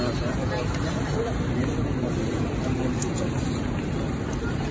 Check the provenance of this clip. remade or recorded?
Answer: remade